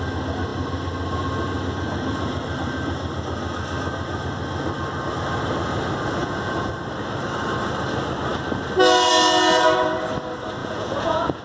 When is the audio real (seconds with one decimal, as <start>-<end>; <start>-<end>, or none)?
0.0-6.2; 6.7-10.6